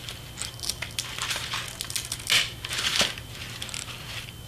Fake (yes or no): no